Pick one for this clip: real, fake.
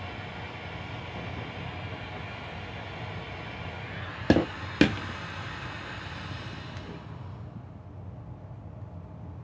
real